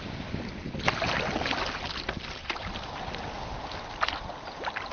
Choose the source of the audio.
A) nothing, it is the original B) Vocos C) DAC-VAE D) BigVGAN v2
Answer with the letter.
A